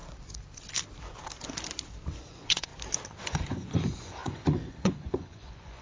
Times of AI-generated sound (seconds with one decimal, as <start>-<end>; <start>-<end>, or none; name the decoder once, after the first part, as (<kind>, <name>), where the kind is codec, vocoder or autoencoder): 2.2-2.7 (vocoder, Vocos); 3.2-5.8

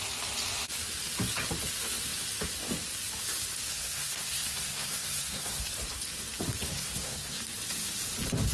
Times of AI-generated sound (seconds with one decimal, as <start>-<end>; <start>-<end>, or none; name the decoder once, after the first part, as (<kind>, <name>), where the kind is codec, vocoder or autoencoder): 3.7-5.7 (codec, SNAC); 6.7-7.4

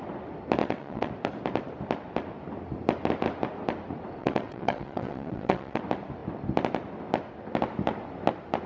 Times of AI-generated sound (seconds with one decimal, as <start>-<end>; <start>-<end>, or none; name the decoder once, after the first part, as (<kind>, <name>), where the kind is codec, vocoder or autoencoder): 0.6-1.1 (vocoder, WaveNeXt); 4.2-5.8

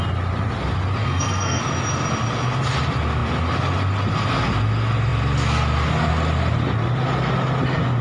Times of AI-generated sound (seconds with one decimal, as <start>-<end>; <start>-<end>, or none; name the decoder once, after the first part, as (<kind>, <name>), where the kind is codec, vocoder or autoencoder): 1.0-1.6 (codec, SNAC)

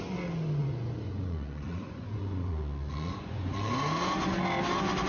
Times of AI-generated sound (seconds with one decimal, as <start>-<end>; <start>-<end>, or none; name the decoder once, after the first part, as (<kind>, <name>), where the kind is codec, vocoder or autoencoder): 0.6-3.7 (vocoder, Vocos)